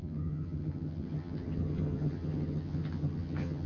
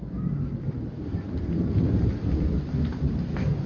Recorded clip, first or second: second